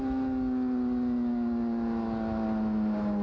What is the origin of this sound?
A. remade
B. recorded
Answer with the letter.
B